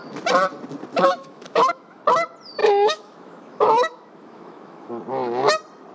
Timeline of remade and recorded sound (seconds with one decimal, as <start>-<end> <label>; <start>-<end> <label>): 0.0-0.9 recorded; 0.9-2.0 remade; 2.0-2.6 recorded; 2.6-4.9 remade; 4.9-5.9 recorded